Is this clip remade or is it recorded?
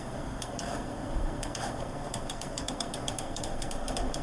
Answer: remade